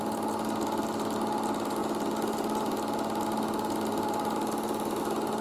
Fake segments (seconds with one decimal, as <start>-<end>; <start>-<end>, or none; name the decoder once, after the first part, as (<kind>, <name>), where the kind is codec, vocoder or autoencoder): none